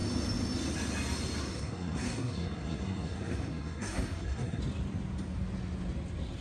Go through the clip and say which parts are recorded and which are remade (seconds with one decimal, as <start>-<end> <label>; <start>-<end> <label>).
0.0-1.4 recorded; 1.4-4.6 remade; 4.6-6.4 recorded